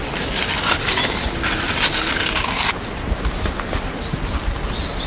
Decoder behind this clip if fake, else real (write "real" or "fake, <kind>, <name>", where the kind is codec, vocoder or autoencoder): real